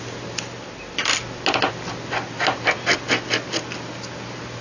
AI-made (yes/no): no